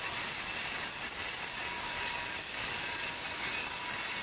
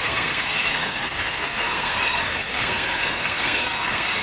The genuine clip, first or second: first